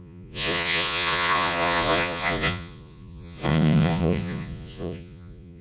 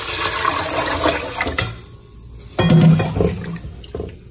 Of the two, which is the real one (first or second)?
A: second